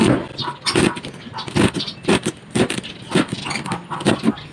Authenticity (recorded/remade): recorded